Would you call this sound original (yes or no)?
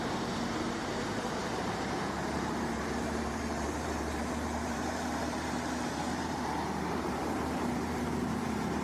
no